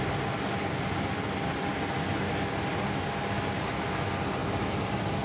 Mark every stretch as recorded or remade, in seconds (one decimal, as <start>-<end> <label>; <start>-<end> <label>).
0.0-5.2 recorded